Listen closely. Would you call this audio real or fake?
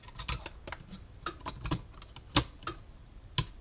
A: real